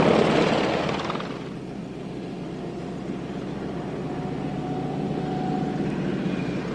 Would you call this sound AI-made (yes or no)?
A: no